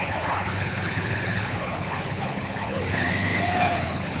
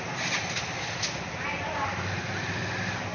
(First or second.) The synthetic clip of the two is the first